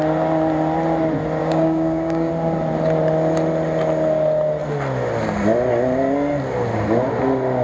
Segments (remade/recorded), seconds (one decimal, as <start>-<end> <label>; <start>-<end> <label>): 0.0-1.4 recorded; 1.4-2.3 remade; 2.3-7.6 recorded